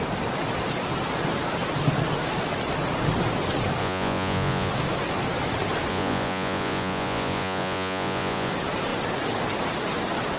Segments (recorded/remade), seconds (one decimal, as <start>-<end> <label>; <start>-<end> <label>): 0.0-3.8 recorded; 3.8-4.7 remade; 4.7-5.9 recorded; 5.9-8.5 remade; 8.5-10.4 recorded